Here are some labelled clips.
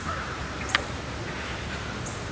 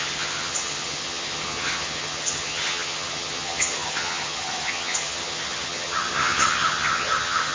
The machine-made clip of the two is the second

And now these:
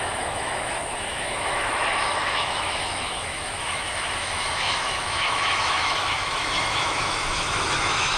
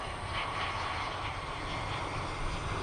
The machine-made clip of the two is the first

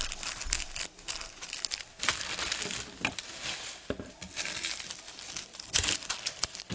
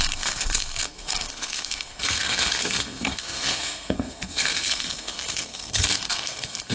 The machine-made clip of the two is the second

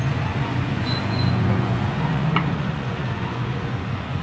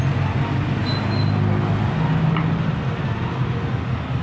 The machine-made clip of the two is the first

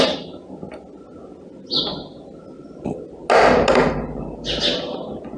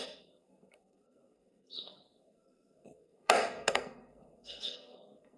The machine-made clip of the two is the second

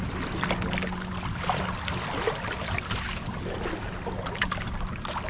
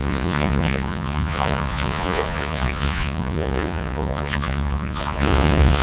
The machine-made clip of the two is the second